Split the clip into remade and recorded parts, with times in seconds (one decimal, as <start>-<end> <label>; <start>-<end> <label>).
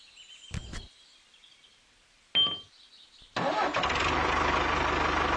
0.0-5.4 recorded